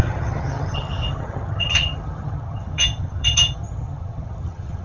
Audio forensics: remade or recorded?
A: remade